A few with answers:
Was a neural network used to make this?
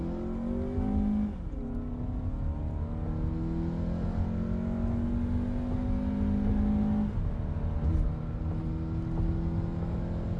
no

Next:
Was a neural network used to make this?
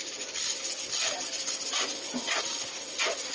no